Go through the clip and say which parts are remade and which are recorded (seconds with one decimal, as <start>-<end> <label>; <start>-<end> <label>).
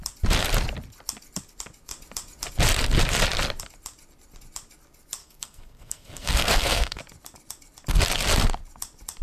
0.0-5.2 recorded; 5.2-7.0 remade; 7.0-9.2 recorded